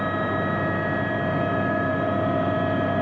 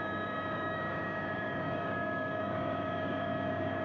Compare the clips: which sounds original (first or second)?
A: first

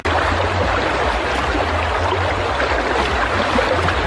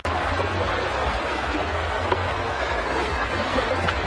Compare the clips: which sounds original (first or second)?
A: first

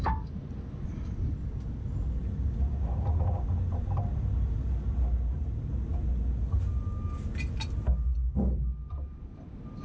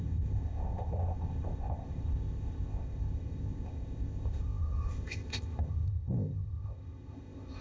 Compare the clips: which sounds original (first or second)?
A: first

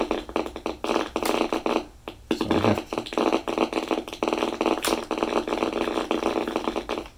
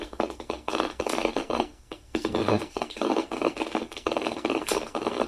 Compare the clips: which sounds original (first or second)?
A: first